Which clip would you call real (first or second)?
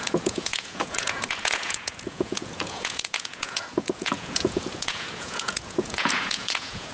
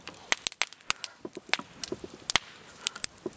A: second